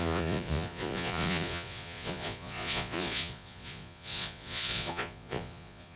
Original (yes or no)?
no